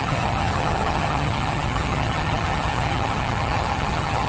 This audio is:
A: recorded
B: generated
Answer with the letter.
B